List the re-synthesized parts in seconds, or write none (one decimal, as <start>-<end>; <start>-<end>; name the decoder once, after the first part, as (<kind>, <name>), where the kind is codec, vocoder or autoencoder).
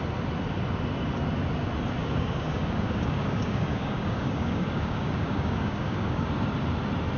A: 2.0-6.3 (codec, DAC)